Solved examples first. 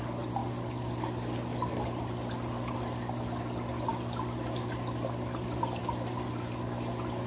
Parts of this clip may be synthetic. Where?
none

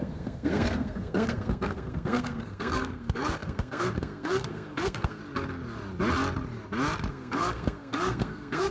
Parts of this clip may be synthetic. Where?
0.0-5.2 (codec, SNAC); 7.1-8.7

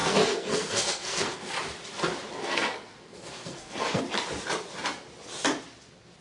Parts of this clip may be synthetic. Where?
0.0-1.5 (codec, SNAC); 2.4-4.0

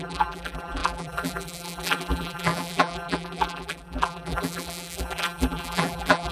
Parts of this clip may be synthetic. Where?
0.0-6.3 (vocoder, BigVGAN v2)

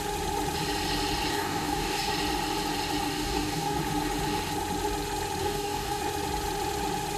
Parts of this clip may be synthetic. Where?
1.3-2.1 (codec, DAC); 3.1-3.8; 5.4-6.0